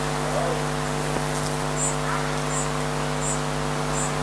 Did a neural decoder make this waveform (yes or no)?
no